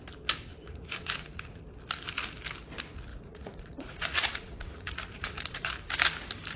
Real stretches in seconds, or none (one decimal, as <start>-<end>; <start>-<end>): 0.0-0.5; 1.6-3.1; 5.7-6.6